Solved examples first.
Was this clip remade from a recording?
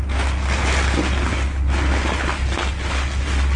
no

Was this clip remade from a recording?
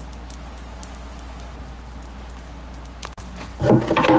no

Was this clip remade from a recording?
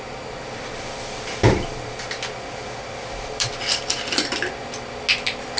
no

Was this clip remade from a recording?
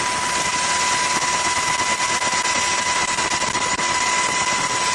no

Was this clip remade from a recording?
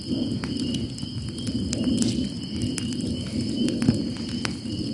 no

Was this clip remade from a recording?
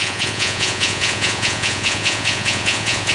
yes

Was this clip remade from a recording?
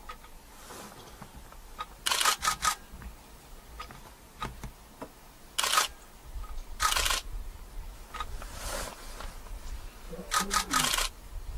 no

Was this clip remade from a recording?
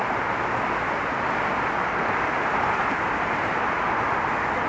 no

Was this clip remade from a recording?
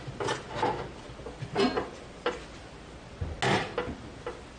no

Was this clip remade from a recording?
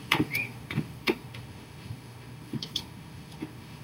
yes